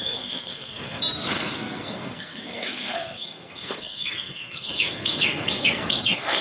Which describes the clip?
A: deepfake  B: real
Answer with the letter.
A